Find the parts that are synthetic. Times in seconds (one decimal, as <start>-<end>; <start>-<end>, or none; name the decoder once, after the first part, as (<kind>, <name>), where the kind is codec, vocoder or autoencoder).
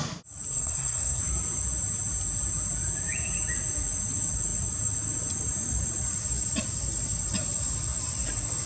0.5-1.2 (codec, SNAC)